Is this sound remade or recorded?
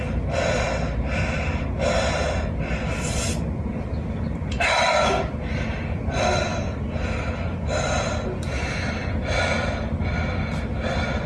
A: recorded